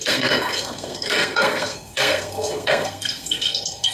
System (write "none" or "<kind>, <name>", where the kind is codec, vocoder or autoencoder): codec, SNAC